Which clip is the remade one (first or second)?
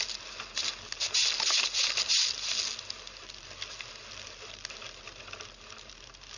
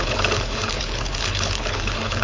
second